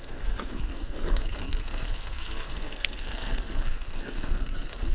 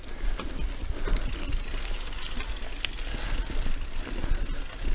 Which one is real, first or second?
second